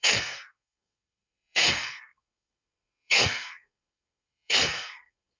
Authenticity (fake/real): fake